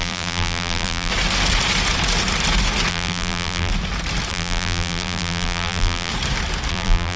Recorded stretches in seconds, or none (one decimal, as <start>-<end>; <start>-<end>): 1.1-2.9; 3.7-4.3; 6.1-6.7